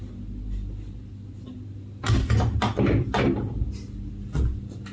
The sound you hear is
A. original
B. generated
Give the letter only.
A